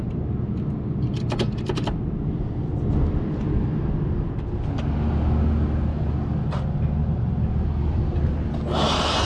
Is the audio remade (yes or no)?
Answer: no